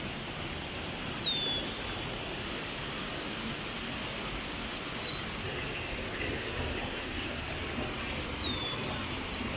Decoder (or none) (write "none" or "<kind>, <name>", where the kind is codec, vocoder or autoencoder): none